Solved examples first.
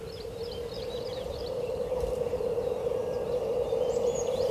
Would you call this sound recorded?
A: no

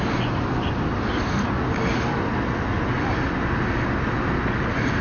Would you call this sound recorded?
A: yes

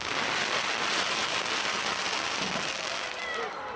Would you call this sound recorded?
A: no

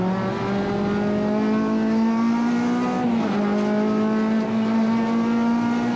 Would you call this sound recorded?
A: yes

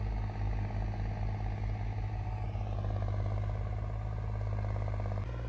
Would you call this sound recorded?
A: yes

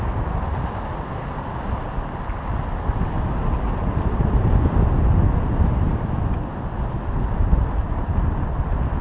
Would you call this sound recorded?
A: yes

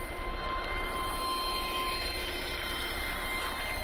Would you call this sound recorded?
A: yes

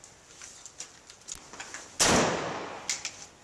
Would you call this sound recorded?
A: yes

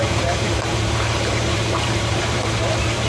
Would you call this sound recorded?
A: no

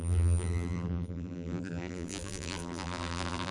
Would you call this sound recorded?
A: no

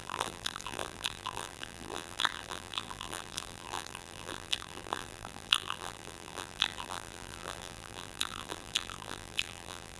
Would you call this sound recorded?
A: no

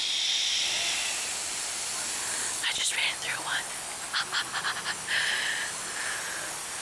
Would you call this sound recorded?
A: yes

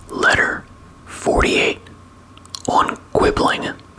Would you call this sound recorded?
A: no